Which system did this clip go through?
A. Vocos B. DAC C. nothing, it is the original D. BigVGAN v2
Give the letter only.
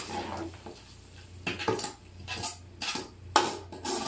C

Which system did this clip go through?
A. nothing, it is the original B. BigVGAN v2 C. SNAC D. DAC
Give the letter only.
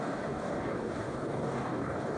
D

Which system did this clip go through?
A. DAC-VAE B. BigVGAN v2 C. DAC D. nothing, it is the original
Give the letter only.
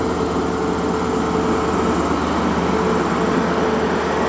D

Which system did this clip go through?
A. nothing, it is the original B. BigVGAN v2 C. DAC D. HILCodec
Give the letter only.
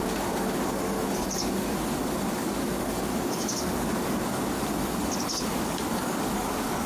C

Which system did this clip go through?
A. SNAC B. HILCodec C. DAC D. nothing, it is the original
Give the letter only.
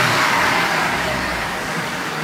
C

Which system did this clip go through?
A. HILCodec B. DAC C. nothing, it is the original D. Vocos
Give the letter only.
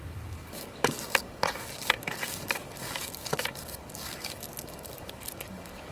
B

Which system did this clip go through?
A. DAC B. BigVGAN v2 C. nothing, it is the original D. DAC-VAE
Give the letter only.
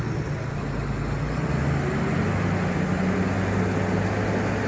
C